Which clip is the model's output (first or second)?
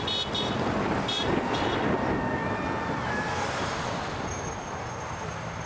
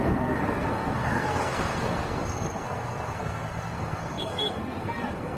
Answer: second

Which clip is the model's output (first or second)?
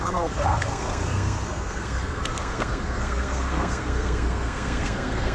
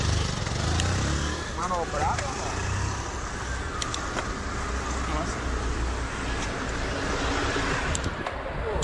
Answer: first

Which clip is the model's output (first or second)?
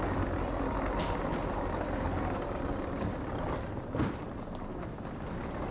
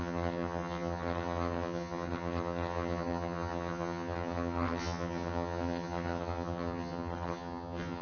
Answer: second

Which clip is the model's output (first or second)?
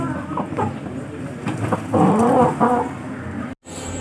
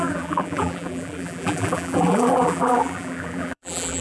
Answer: second